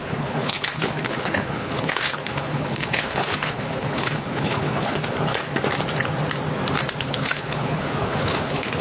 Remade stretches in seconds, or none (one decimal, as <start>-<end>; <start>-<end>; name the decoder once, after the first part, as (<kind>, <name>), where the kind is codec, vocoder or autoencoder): 0.0-5.4 (codec, HILCodec); 7.0-8.8